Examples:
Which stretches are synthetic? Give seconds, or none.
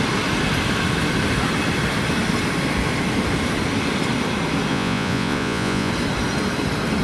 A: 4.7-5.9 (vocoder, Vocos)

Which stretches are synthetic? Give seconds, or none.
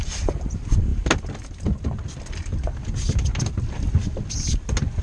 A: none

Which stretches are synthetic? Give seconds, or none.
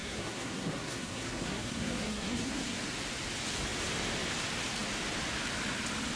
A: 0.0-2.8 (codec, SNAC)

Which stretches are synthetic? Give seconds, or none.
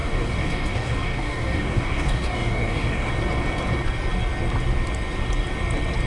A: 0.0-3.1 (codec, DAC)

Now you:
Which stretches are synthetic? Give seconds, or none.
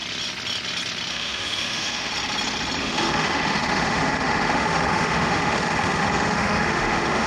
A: 1.1-2.1 (autoencoder, DAC-VAE); 2.8-7.3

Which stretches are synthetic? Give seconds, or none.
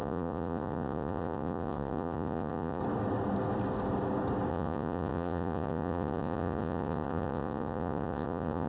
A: 0.0-2.8 (vocoder, Vocos); 4.5-8.7